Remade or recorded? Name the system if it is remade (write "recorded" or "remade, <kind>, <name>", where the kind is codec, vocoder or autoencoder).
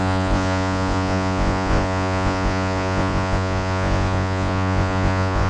remade, vocoder, Vocos